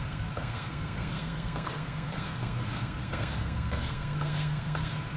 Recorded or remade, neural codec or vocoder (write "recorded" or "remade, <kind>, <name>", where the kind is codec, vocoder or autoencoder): remade, codec, SNAC